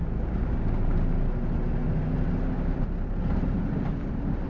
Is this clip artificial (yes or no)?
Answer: no